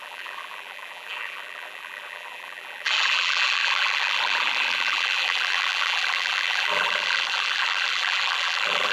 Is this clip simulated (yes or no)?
yes